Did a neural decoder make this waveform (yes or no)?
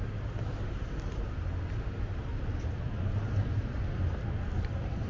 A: no